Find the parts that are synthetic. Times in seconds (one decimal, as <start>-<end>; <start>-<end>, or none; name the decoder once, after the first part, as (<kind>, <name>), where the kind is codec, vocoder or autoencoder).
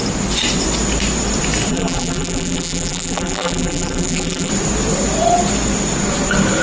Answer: 1.7-4.5 (vocoder, BigVGAN v2)